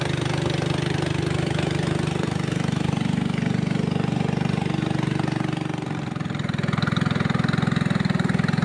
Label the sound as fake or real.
real